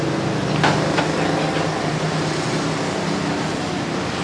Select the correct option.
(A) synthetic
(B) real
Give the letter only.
B